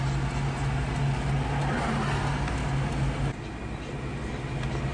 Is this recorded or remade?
recorded